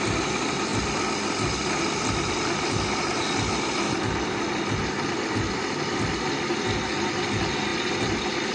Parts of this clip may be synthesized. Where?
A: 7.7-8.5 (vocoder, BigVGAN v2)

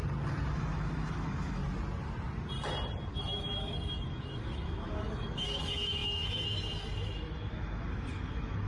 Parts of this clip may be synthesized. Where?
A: 0.5-1.6 (autoencoder, DAC-VAE); 3.1-8.7

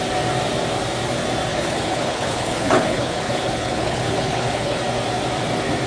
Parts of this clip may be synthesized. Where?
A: 1.5-4.8 (codec, HILCodec)

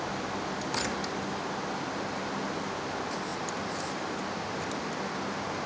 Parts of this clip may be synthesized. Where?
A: none

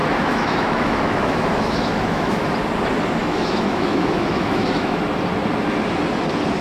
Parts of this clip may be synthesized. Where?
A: 0.0-2.5 (autoencoder, DAC-VAE); 3.2-5.0